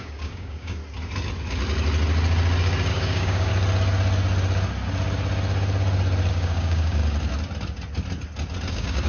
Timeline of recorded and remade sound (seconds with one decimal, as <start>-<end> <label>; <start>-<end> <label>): 0.0-0.8 remade; 0.8-2.9 recorded; 2.9-3.5 remade; 3.5-6.3 recorded; 6.3-7.0 remade; 7.0-8.7 recorded; 8.7-9.1 remade